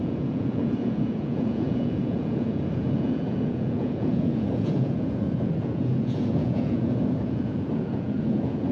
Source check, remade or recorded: remade